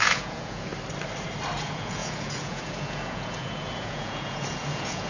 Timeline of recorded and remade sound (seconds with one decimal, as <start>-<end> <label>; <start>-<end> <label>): 0.0-0.7 remade; 0.7-1.6 recorded; 1.6-5.1 remade